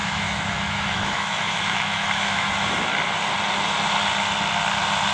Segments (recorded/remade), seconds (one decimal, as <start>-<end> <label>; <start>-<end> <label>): 0.0-2.5 remade; 2.5-5.1 recorded